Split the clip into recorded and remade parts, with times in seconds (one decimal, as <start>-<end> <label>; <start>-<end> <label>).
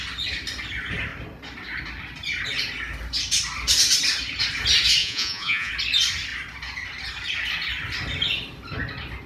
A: 0.0-5.0 recorded; 5.0-5.7 remade; 5.7-9.3 recorded